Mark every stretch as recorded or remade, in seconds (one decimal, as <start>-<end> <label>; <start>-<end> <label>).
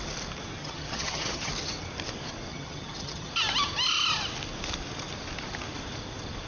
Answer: 0.0-0.6 recorded; 0.6-1.5 remade; 1.5-2.5 recorded; 2.5-3.3 remade; 3.3-6.5 recorded